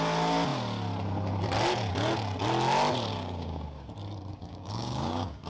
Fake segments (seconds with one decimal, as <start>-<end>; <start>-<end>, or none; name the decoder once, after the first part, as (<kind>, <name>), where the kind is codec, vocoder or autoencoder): 3.1-3.9 (codec, DAC); 4.3-5.5